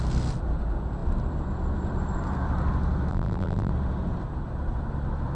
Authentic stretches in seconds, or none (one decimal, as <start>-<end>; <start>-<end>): 0.0-3.1; 3.7-5.3